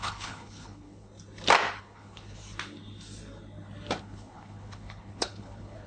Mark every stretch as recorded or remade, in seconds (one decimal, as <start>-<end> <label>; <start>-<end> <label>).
0.0-1.1 remade; 1.1-1.8 recorded; 1.8-2.4 remade; 2.4-4.0 recorded; 4.0-5.9 remade